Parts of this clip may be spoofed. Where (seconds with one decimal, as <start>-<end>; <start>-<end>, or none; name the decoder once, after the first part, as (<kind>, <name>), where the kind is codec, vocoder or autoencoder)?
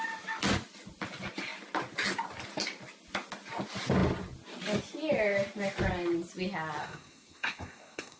6.8-8.2 (codec, SNAC)